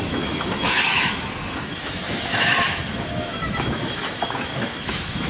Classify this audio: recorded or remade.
remade